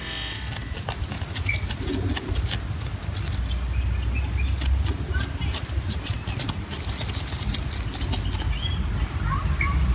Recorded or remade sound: recorded